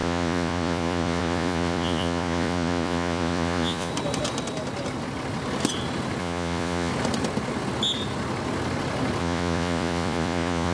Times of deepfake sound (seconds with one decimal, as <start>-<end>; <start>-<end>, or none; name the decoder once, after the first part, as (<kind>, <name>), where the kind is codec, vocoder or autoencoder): 0.0-3.9 (vocoder, Vocos); 6.2-6.9; 9.2-10.7

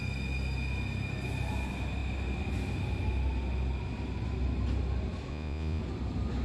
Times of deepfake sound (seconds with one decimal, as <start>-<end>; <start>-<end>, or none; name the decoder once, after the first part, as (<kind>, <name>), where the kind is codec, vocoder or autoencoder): 5.3-5.8 (vocoder, Vocos)